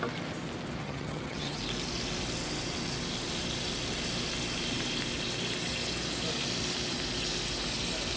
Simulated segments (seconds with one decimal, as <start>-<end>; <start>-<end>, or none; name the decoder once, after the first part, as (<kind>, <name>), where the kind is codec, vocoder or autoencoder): 0.8-1.6 (vocoder, HiFi-GAN)